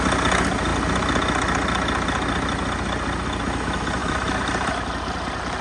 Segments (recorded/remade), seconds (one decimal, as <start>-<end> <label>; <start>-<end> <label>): 0.0-4.0 recorded; 4.0-4.8 remade; 4.8-5.6 recorded